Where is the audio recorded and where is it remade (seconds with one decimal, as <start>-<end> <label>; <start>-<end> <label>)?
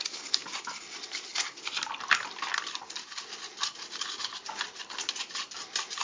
0.0-6.0 recorded